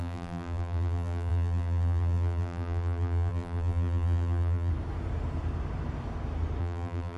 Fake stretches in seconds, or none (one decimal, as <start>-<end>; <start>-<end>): 0.0-4.7; 6.6-7.2